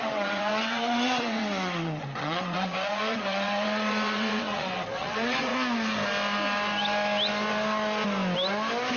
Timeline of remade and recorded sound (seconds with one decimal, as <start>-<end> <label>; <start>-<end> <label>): 0.0-5.5 remade; 5.5-9.0 recorded